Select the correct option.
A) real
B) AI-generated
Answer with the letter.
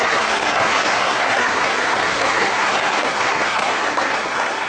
B